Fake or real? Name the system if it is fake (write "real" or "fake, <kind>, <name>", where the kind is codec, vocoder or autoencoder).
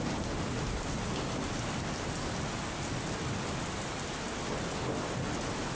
real